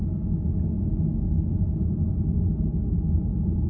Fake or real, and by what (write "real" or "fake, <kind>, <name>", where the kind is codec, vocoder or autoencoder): real